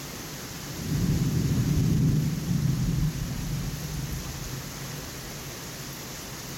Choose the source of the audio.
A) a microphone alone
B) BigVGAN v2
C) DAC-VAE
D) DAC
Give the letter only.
A